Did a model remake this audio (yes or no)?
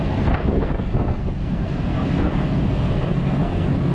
yes